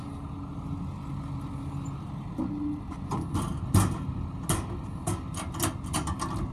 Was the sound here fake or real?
real